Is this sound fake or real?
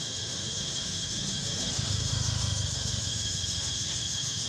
fake